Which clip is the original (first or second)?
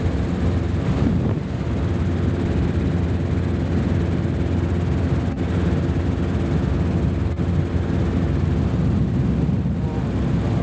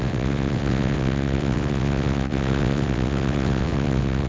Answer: first